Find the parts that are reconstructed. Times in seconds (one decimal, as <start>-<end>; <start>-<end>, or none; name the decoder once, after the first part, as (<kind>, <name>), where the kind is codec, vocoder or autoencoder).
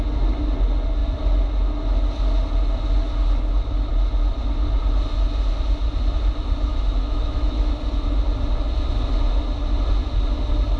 6.7-7.7 (autoencoder, DAC-VAE)